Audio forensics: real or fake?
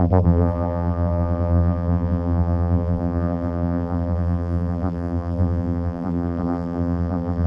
fake